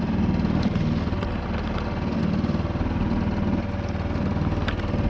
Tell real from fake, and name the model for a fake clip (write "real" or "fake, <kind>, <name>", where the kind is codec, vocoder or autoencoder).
real